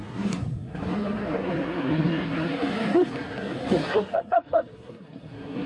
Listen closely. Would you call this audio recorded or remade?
remade